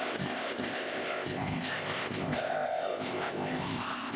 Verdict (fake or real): fake